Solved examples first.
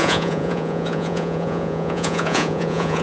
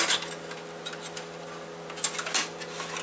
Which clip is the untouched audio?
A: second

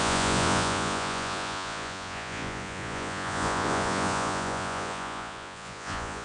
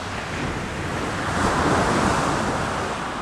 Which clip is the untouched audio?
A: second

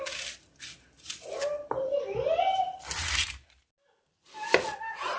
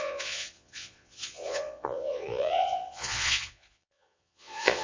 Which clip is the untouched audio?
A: first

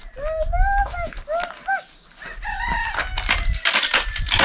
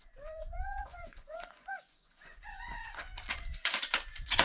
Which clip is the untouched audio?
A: first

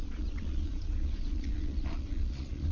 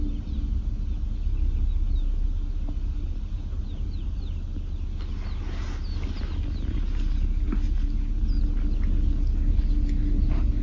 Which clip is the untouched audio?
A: second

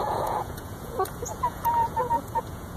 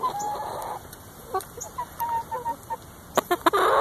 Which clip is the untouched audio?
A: second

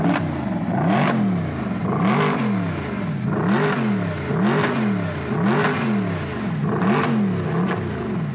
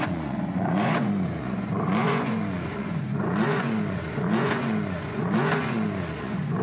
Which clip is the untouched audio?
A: first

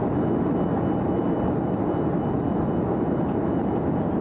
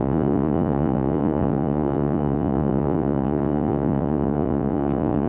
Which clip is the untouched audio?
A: first